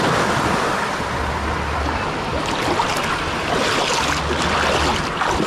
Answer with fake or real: real